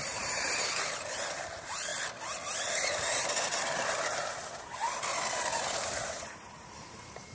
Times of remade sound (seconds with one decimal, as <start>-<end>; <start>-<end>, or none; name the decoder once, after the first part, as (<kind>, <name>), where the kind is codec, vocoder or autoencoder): 0.0-1.9 (vocoder, BigVGAN v2); 2.6-7.3